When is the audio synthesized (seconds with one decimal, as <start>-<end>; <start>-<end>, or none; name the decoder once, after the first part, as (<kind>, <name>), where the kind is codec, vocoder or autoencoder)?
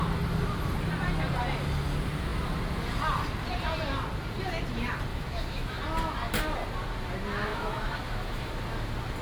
5.1-5.8 (autoencoder, DAC-VAE); 7.5-8.5